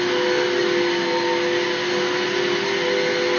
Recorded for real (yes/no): yes